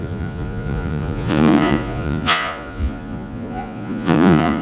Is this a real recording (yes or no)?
no